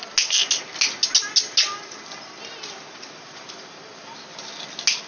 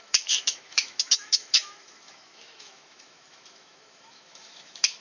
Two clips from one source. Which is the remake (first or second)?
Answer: second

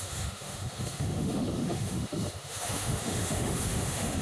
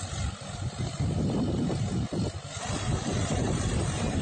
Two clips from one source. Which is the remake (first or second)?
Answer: first